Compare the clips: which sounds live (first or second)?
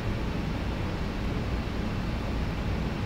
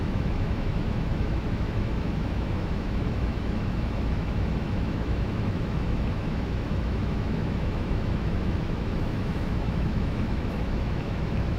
first